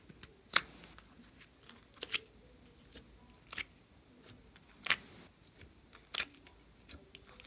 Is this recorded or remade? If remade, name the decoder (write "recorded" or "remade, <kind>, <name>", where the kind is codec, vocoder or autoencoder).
recorded